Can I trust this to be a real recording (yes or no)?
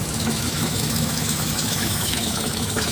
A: no